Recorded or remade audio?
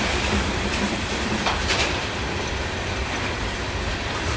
remade